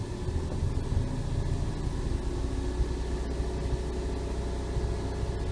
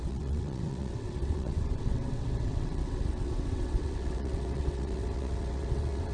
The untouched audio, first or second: first